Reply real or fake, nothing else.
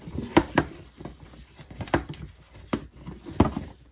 fake